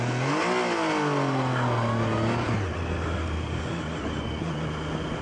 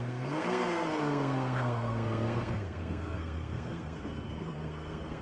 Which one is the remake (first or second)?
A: second